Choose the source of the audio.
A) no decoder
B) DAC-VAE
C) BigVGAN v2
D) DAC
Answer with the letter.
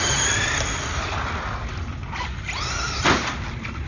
A